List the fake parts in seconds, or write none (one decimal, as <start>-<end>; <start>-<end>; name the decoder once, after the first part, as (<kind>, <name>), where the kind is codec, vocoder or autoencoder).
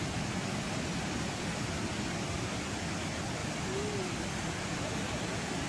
none